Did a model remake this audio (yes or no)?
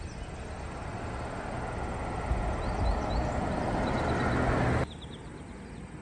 no